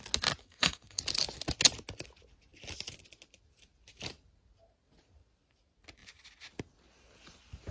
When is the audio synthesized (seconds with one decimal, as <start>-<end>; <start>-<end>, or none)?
0.4-1.0